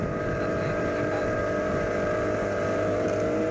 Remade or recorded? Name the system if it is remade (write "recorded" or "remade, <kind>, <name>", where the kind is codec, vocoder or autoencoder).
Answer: remade, vocoder, BigVGAN v2